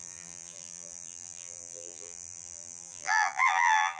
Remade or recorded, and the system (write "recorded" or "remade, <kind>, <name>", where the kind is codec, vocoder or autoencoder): remade, vocoder, BigVGAN v2